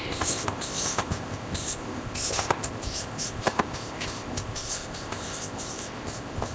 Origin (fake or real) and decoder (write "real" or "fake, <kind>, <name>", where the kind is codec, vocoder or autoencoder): fake, codec, ZipCodec